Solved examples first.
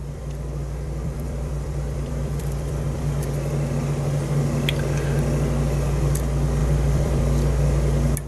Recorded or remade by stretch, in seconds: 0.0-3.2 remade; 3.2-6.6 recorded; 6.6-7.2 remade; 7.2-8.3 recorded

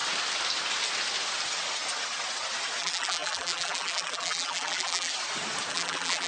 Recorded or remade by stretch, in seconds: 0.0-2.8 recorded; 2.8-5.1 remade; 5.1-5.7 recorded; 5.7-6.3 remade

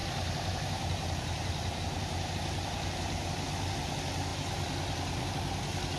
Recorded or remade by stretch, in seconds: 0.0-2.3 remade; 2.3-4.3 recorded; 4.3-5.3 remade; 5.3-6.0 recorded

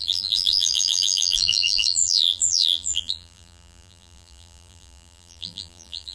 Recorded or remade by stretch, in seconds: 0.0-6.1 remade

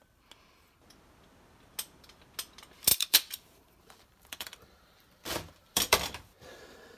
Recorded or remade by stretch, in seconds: 0.0-2.9 recorded; 2.9-7.0 remade

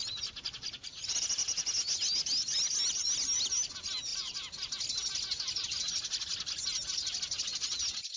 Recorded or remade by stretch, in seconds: 0.0-1.6 remade; 1.6-4.1 recorded; 4.1-4.7 remade; 4.7-8.2 recorded

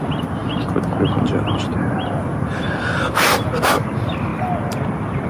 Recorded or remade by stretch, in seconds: 0.0-0.4 remade; 0.4-1.2 recorded; 1.2-4.3 remade; 4.3-5.3 recorded